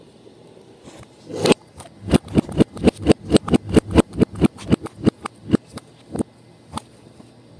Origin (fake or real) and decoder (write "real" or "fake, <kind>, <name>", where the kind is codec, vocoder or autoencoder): real